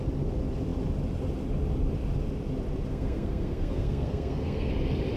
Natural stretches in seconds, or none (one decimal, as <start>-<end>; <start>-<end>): 0.0-2.9; 4.7-5.2